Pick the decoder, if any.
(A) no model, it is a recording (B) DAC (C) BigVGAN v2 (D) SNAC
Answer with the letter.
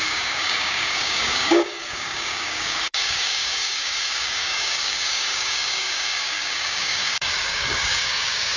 B